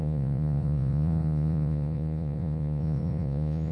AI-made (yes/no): yes